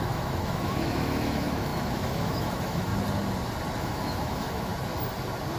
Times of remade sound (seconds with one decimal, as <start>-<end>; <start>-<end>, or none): 0.0-2.9; 3.8-4.7